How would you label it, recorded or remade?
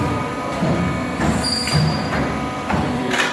remade